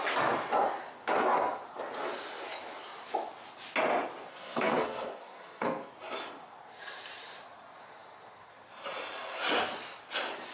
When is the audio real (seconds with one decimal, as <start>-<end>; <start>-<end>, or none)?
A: 0.0-4.3; 5.9-10.5